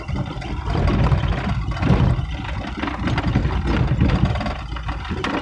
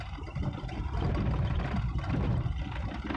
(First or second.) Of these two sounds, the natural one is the first